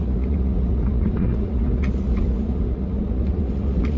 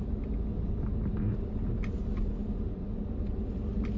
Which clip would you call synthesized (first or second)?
first